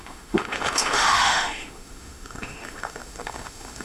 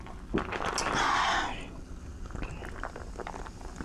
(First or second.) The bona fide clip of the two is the second